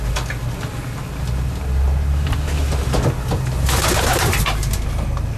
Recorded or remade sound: recorded